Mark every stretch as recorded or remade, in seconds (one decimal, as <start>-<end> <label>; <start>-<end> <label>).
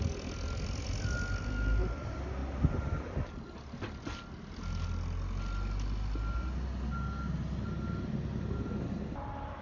0.0-9.6 recorded